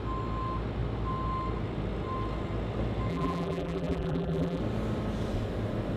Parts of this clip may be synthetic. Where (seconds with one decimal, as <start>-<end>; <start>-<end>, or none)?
3.1-4.6